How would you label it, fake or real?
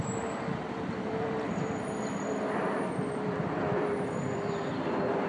fake